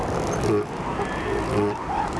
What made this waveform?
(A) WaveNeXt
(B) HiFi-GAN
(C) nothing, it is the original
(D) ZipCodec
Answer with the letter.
C